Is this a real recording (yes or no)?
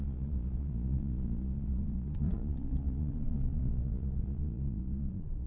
no